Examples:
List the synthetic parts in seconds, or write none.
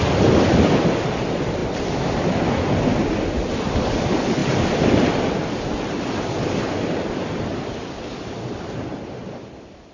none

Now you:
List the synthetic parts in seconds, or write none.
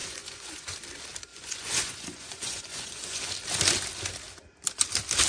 0.0-0.7 (vocoder, Vocos); 1.3-3.3